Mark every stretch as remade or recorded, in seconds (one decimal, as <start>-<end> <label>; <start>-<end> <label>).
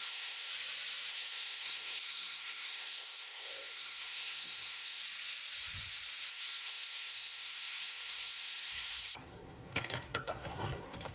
0.0-0.5 remade; 0.5-1.1 recorded; 1.1-5.0 remade; 5.0-6.3 recorded; 6.3-11.1 remade